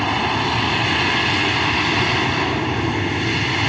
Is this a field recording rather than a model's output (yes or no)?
yes